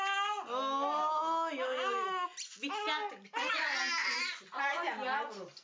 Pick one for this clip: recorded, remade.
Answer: recorded